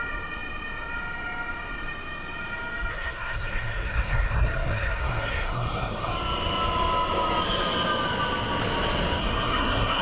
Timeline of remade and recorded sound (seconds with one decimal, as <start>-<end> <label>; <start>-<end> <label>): 0.0-2.9 recorded; 2.9-6.1 remade; 6.1-9.2 recorded; 9.2-10.0 remade